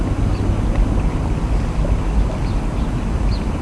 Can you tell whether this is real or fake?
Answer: real